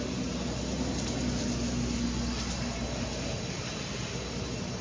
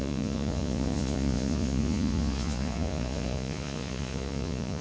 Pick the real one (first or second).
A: first